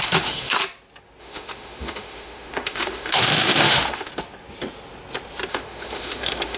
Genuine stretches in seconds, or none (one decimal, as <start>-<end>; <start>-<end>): 0.6-1.2; 4.1-5.5